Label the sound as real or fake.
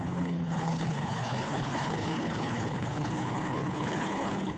fake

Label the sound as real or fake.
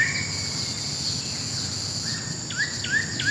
real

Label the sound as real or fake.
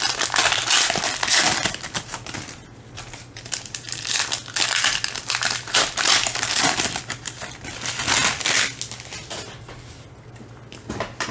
real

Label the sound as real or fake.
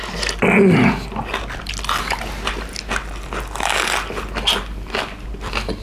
real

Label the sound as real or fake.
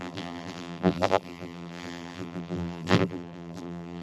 fake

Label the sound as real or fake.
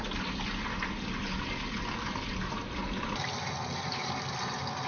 real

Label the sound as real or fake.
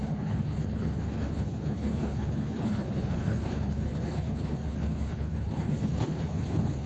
fake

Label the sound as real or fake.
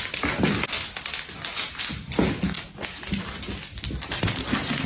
real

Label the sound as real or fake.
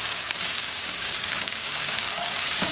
fake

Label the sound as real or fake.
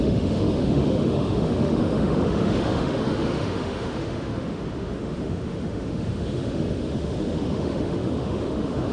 fake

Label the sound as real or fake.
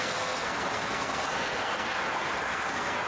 fake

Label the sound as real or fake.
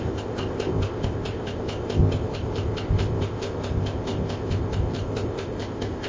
fake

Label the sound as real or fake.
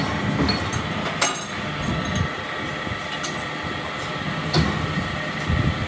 real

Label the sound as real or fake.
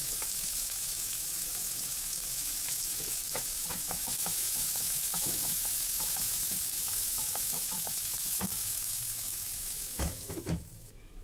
fake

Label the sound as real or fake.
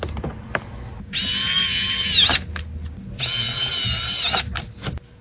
real